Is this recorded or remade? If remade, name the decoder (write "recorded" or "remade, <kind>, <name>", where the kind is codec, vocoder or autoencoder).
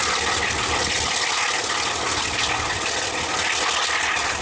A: recorded